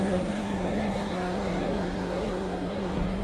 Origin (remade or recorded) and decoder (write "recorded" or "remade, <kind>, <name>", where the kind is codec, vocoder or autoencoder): remade, codec, SNAC